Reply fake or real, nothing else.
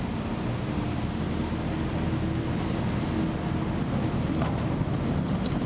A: real